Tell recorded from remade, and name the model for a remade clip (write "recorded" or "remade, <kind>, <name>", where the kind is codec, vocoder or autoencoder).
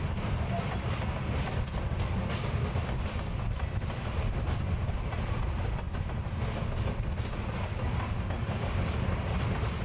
recorded